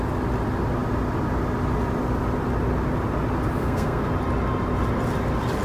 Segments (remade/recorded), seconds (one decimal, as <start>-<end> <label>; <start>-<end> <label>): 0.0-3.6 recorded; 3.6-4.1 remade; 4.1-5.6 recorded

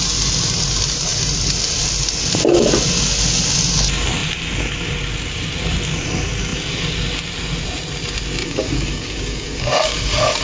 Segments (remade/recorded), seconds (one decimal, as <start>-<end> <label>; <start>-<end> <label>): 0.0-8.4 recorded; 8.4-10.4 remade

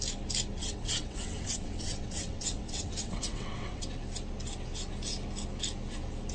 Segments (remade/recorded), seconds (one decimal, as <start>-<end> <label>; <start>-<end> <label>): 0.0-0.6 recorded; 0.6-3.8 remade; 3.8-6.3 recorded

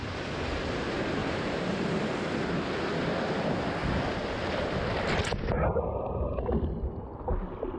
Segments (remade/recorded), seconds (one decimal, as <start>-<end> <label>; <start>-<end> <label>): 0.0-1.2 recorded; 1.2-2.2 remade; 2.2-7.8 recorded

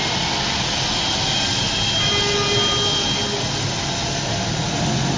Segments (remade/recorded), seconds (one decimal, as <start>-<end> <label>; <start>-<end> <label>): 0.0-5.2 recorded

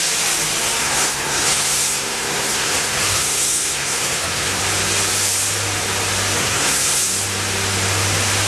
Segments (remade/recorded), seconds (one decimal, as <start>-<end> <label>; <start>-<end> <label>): 0.0-0.8 recorded; 0.8-4.6 remade; 4.6-6.4 recorded; 6.4-7.0 remade; 7.0-8.5 recorded

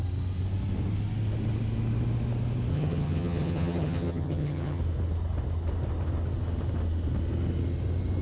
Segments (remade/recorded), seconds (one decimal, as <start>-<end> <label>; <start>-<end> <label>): 0.0-2.7 recorded; 2.7-4.8 remade; 4.8-8.2 recorded

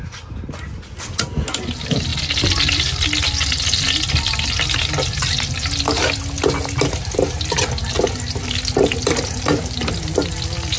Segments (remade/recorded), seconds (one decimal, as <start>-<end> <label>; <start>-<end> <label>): 0.0-10.8 recorded